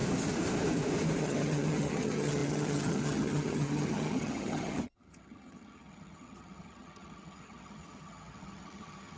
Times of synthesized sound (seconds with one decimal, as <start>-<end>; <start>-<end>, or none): 1.2-9.2

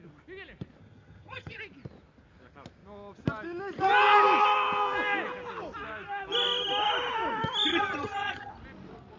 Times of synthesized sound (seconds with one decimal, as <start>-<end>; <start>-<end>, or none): 0.8-1.6; 7.7-8.5

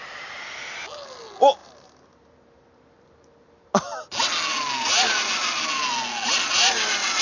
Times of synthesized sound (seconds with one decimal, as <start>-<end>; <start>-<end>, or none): none

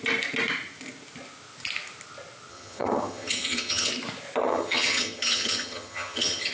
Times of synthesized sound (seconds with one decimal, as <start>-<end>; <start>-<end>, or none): 2.5-3.9; 4.4-6.5

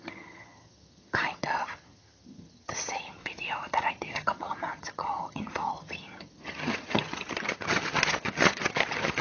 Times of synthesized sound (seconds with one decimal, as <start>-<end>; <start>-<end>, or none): 0.0-3.2; 3.9-9.2

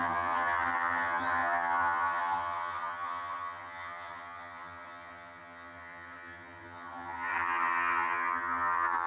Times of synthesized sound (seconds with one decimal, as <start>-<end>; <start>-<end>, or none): 0.0-9.1

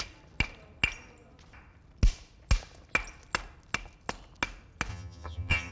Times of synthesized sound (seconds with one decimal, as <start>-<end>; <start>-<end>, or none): 4.9-5.7